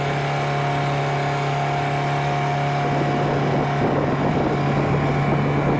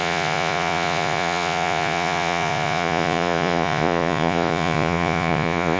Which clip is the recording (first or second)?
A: first